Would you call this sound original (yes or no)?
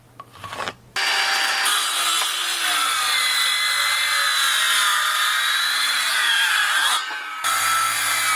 yes